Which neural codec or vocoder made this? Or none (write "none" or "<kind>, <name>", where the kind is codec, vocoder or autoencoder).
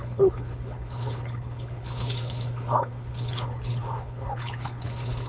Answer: codec, HILCodec